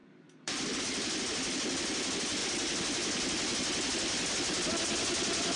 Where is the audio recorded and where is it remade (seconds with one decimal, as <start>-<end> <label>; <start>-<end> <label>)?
0.0-0.8 remade; 0.8-5.6 recorded